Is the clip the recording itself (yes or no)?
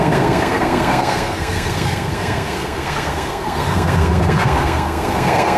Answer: no